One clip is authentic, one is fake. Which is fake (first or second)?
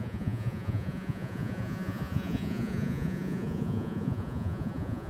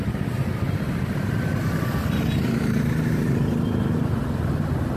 first